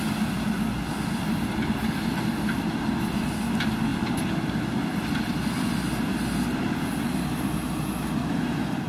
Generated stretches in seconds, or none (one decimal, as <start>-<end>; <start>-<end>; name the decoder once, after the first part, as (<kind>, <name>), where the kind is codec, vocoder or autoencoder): none